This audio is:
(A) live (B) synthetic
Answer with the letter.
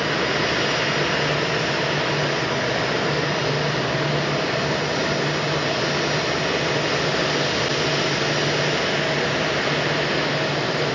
A